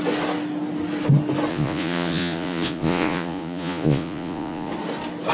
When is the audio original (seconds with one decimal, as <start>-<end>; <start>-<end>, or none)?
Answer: 0.0-1.5; 4.7-5.3